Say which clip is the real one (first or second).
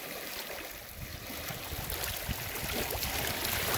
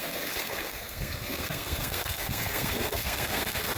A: first